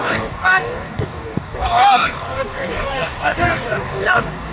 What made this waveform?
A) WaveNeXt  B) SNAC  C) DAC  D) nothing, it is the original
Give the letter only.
C